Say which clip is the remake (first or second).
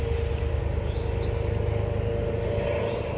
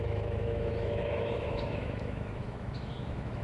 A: second